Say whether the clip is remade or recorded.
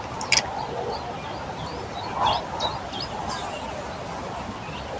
recorded